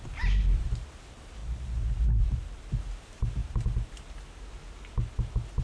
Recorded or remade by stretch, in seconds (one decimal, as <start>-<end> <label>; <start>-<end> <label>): 0.0-1.4 recorded; 1.4-2.7 remade; 2.7-5.6 recorded

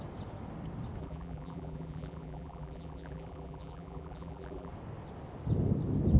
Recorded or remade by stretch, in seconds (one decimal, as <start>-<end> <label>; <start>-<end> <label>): 0.0-1.0 recorded; 1.0-4.7 remade; 4.7-6.2 recorded

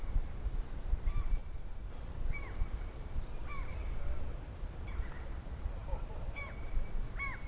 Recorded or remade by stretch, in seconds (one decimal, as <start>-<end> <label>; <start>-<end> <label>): 0.0-1.4 remade; 1.4-1.9 recorded; 1.9-3.7 remade; 3.7-4.3 recorded; 4.3-7.5 remade

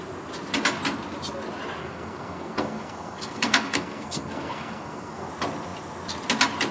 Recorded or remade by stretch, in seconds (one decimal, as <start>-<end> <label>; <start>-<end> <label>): 0.0-1.8 recorded; 1.8-5.3 remade; 5.3-6.7 recorded

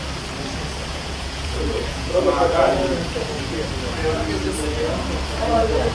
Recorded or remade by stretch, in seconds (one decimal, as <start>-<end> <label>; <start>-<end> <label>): 0.0-0.9 recorded; 0.9-3.6 remade; 3.6-4.4 recorded; 4.4-5.0 remade; 5.0-5.9 recorded